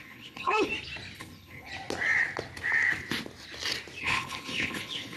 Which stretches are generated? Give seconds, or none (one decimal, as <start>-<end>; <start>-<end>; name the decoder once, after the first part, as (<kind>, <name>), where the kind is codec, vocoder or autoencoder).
0.0-0.7 (codec, HILCodec); 1.2-1.7; 4.0-5.2